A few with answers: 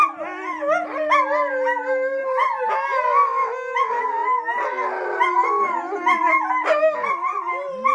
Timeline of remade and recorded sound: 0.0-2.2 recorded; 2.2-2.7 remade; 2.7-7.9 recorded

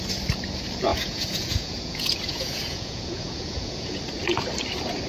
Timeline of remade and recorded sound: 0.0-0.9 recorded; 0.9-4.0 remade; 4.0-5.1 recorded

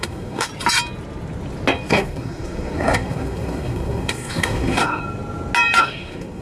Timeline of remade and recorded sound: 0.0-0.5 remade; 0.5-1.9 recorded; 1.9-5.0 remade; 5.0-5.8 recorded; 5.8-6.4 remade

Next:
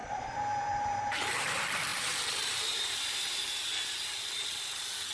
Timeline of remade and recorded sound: 0.0-1.3 remade; 1.3-1.9 recorded; 1.9-4.3 remade; 4.3-5.1 recorded